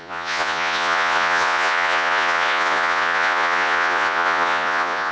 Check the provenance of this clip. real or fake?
fake